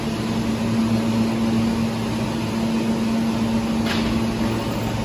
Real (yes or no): yes